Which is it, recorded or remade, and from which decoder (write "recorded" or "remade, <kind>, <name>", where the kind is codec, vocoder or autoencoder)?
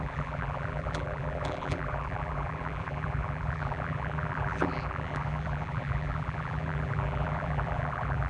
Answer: remade, vocoder, BigVGAN v2